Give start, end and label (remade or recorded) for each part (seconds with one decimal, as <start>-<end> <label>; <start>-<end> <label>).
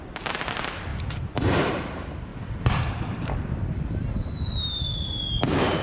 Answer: 0.0-0.9 recorded; 0.9-1.7 remade; 1.7-2.3 recorded; 2.3-4.8 remade; 4.8-5.8 recorded